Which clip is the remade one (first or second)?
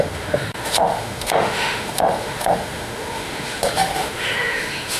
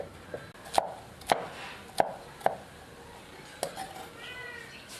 first